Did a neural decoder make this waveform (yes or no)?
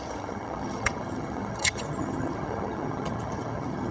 yes